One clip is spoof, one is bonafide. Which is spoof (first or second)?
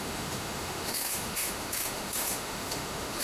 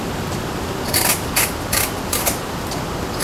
first